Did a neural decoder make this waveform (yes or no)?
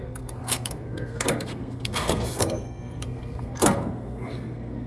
yes